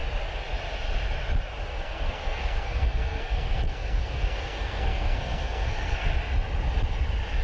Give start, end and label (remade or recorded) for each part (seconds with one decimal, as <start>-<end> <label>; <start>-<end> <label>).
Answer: 0.0-1.7 recorded; 1.7-6.1 remade; 6.1-7.4 recorded

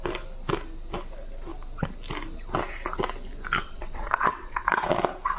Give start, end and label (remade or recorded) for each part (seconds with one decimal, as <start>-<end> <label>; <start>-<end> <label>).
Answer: 0.0-3.6 recorded; 3.6-4.9 remade; 4.9-5.4 recorded

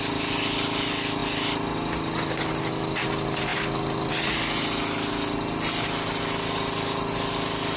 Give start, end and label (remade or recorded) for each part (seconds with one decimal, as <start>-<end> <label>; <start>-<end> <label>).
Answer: 0.0-7.8 recorded

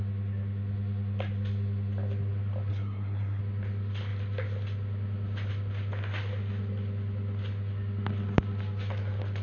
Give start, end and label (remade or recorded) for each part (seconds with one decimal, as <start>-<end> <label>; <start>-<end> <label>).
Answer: 0.0-2.7 recorded; 2.7-3.4 remade; 3.4-9.4 recorded

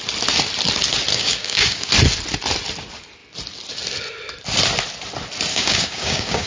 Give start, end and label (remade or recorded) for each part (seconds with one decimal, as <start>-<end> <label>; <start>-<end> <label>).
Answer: 0.0-1.1 recorded; 1.1-1.9 remade; 1.9-5.5 recorded; 5.5-6.5 remade